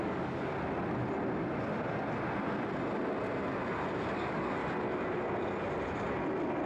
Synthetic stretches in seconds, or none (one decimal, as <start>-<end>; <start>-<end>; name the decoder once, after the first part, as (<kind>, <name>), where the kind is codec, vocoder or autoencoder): 0.0-0.5 (codec, DAC); 4.1-4.6